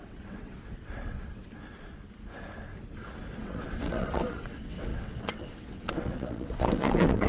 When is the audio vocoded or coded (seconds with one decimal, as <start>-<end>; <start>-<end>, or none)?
0.0-1.4; 3.4-7.3